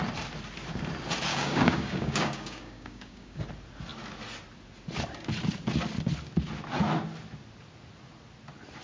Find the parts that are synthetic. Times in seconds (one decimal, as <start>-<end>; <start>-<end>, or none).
1.3-3.4